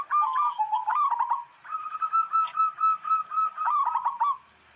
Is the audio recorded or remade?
recorded